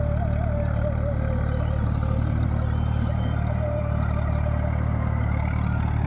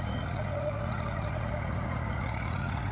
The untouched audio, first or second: first